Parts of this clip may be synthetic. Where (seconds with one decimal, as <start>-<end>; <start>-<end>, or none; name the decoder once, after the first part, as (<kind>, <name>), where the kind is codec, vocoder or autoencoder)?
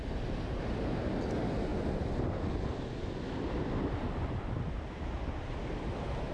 none